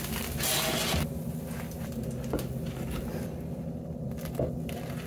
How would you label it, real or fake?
real